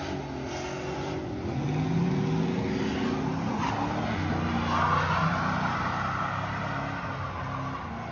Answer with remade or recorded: recorded